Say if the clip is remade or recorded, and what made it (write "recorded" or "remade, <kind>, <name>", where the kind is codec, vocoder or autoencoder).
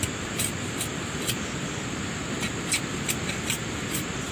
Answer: remade, vocoder, BigVGAN v2